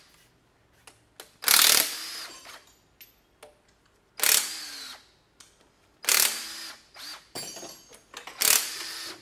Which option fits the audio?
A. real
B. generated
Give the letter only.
A